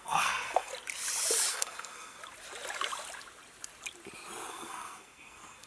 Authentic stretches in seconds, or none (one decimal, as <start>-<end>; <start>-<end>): 0.7-1.5; 2.2-4.5